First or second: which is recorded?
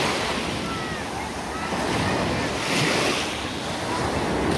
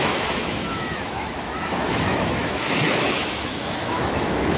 first